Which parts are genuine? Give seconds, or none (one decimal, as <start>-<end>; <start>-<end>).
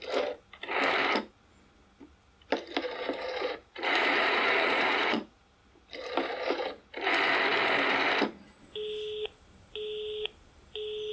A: 0.0-3.6; 5.4-11.1